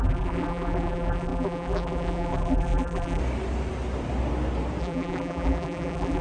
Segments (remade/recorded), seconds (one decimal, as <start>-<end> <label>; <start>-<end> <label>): 0.0-3.2 remade; 3.2-4.8 recorded; 4.8-6.2 remade